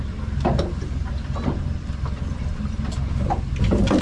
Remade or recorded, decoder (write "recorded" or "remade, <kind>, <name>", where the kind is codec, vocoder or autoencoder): recorded